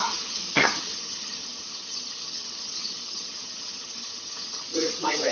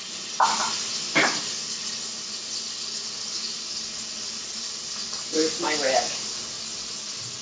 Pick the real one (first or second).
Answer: second